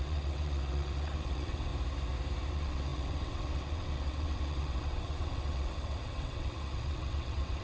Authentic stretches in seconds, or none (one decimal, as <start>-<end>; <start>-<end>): 1.7-2.5